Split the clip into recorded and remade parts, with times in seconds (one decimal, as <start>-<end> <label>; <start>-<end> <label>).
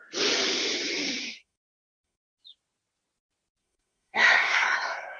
0.0-1.2 recorded; 1.2-2.4 remade; 2.4-3.6 recorded; 3.6-5.2 remade